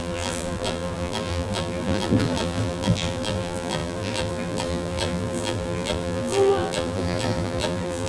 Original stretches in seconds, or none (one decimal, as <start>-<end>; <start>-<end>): none